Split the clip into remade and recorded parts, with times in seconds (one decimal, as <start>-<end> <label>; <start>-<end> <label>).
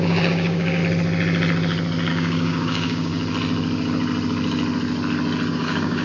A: 0.0-0.8 remade; 0.8-2.1 recorded; 2.1-3.1 remade; 3.1-5.5 recorded; 5.5-6.0 remade